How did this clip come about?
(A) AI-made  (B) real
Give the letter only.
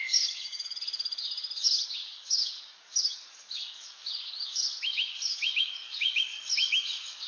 A